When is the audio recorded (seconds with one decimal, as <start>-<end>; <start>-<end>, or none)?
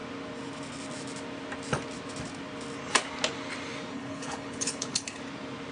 0.0-3.9; 5.2-5.7